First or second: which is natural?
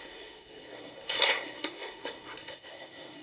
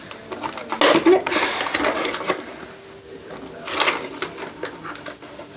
second